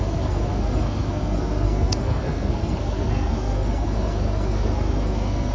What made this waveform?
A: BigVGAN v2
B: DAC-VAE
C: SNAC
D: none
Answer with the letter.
C